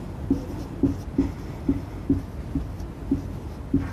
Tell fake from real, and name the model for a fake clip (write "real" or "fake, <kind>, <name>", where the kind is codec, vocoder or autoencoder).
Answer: real